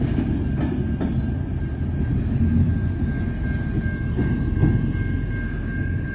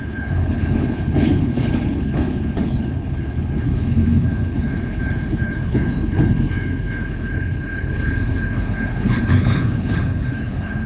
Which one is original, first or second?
first